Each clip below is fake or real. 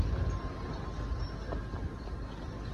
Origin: real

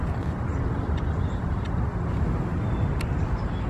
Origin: real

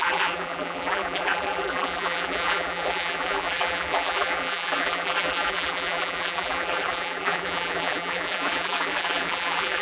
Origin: fake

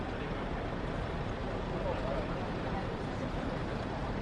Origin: fake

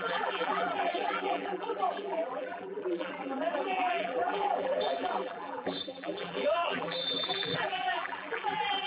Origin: fake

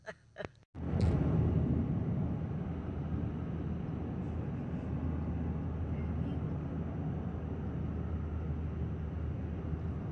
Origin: real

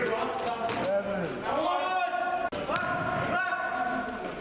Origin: real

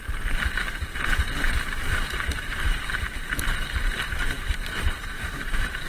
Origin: fake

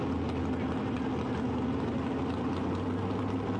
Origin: real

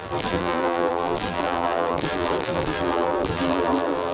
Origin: fake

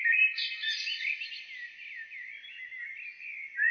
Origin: real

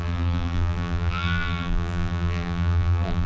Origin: fake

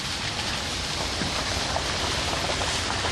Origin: fake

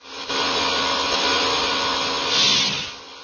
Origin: real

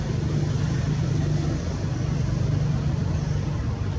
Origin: real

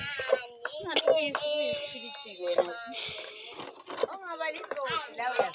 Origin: real